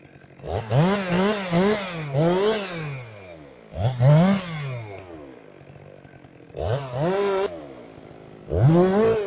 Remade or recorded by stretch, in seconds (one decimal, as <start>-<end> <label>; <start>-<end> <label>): 0.0-9.3 recorded